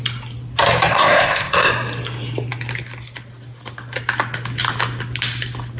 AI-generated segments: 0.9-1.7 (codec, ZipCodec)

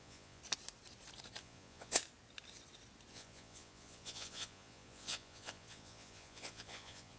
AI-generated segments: 0.0-0.4 (vocoder, Vocos); 1.4-2.0; 3.1-7.2

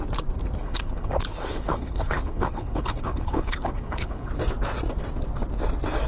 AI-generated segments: 0.6-4.3 (codec, HILCodec)